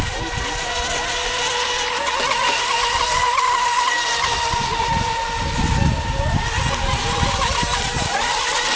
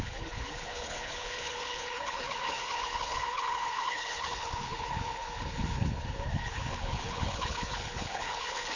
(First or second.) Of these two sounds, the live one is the first